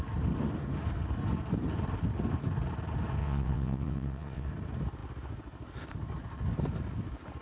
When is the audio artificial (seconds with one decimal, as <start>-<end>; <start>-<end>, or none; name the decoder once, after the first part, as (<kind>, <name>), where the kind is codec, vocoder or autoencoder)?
3.2-4.5 (vocoder, WaveNeXt)